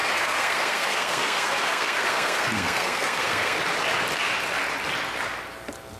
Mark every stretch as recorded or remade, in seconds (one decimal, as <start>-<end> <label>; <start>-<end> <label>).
0.0-3.6 remade; 3.6-6.0 recorded